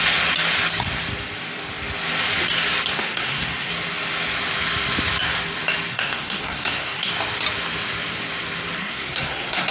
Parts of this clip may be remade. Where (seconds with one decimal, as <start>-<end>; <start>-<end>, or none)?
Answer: 2.9-3.7; 5.9-7.1; 8.8-9.7